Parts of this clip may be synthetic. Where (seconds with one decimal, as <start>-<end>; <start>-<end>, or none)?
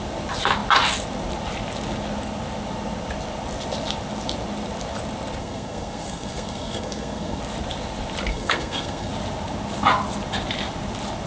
5.4-7.4; 8.3-9.1